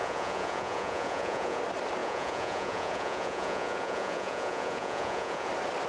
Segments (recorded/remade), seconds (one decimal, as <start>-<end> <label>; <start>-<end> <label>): 0.0-1.6 remade; 1.6-2.0 recorded; 2.0-5.5 remade; 5.5-5.9 recorded